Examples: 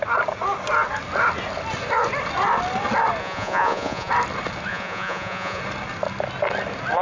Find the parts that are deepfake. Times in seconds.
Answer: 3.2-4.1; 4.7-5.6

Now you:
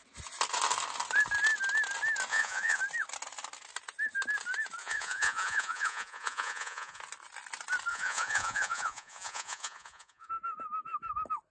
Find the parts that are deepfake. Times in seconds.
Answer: 2.3-2.8; 4.8-7.0; 7.9-10.3